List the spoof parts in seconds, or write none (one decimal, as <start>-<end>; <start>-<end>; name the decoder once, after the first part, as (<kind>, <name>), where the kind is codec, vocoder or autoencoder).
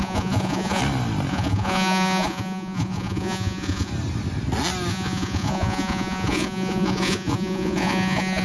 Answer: 0.0-0.8 (vocoder, Vocos); 1.3-3.9; 4.9-8.4